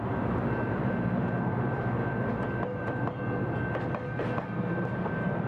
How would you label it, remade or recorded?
recorded